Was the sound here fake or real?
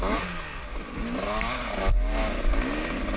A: real